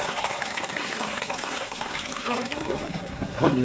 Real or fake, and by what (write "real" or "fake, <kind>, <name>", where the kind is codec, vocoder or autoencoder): fake, codec, SNAC